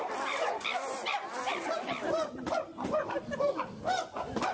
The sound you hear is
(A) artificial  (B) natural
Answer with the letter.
B